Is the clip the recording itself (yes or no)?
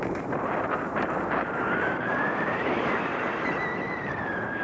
no